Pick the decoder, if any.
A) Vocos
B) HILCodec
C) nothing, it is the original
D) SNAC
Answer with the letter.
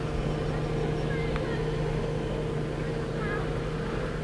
C